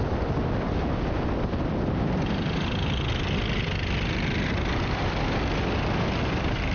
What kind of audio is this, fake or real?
real